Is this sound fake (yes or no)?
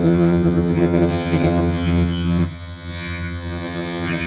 yes